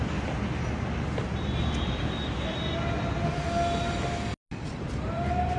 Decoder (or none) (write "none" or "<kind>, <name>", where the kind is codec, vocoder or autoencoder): none